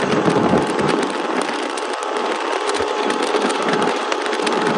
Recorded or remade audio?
remade